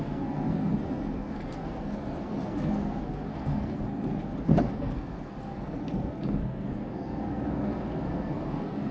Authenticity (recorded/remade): remade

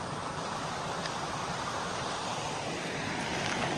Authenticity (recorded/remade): recorded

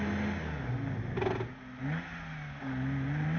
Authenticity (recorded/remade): recorded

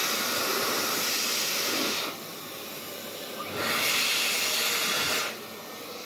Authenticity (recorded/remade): recorded